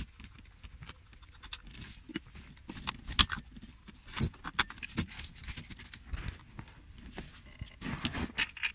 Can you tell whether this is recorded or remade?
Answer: recorded